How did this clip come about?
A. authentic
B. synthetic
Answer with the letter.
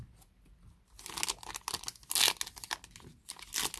A